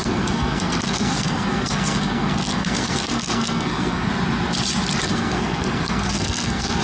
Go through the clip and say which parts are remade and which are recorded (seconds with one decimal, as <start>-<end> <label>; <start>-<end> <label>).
0.0-4.1 remade; 4.1-5.0 recorded; 5.0-6.8 remade